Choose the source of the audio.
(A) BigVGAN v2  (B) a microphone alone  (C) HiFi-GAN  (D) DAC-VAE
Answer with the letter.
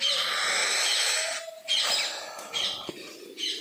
B